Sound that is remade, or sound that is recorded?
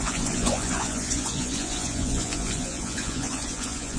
remade